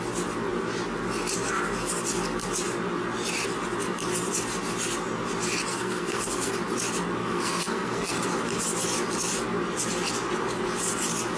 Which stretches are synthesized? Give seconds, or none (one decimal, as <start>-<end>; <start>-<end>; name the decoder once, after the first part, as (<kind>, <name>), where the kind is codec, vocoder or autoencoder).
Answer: 5.7-6.5 (codec, SNAC); 7.2-8.3